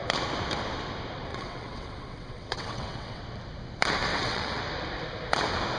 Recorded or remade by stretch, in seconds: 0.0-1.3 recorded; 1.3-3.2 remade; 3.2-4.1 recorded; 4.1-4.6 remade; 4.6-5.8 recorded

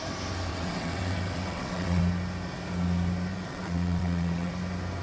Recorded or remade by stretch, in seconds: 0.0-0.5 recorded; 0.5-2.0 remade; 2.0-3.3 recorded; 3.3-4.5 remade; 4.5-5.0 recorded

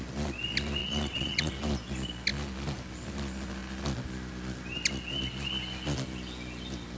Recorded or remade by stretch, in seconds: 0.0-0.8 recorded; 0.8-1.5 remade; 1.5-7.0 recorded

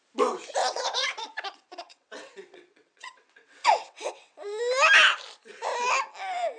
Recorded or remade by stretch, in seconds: 0.0-0.6 recorded; 0.6-4.6 remade; 4.6-6.6 recorded

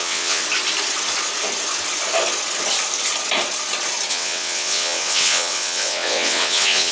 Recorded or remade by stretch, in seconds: 0.0-0.4 remade; 0.4-4.1 recorded; 4.1-6.9 remade

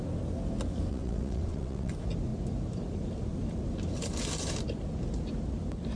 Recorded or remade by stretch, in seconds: 0.0-0.9 recorded; 0.9-1.9 remade; 1.9-6.0 recorded

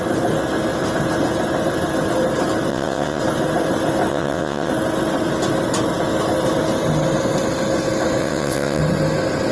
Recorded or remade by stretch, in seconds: 0.0-2.7 recorded; 2.7-3.2 remade; 3.2-4.1 recorded; 4.1-4.7 remade; 4.7-8.2 recorded; 8.2-8.8 remade; 8.8-9.5 recorded